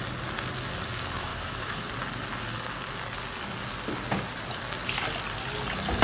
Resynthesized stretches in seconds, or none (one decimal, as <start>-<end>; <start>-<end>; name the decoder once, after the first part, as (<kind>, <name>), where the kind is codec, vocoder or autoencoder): 1.3-1.9 (autoencoder, DAC-VAE)